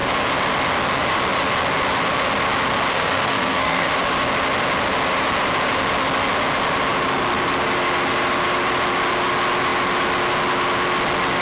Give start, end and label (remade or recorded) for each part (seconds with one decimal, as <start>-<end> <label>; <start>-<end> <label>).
0.0-2.9 recorded; 2.9-3.9 remade; 3.9-11.4 recorded